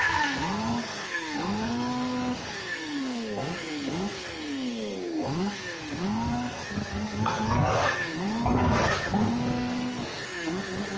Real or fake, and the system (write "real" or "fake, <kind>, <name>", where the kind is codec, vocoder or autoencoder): fake, codec, SNAC